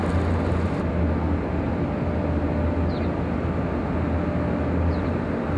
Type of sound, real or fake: real